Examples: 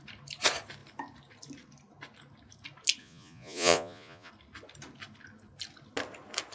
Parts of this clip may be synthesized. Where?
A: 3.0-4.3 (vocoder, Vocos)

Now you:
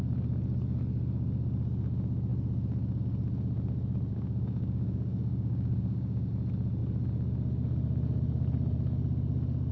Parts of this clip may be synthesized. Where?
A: 4.1-6.3 (codec, DAC)